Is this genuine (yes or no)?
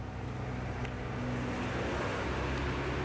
yes